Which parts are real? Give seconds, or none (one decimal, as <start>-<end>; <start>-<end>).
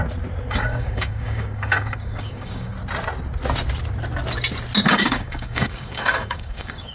0.0-0.5; 2.7-4.9